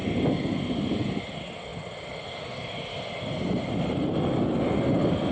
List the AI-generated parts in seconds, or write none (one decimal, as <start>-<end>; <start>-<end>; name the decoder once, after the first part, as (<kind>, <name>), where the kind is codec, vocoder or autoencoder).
none